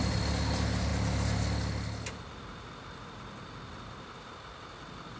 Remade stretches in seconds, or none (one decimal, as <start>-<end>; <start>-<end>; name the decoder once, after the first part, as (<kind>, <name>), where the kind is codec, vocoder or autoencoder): none